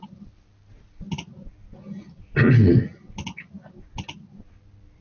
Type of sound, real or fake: real